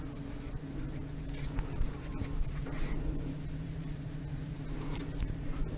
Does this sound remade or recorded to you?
remade